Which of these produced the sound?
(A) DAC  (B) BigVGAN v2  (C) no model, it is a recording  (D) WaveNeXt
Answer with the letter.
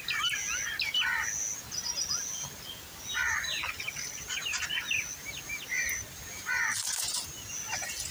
C